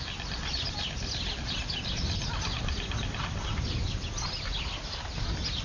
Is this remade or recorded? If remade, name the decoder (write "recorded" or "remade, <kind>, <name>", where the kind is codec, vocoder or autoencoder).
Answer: recorded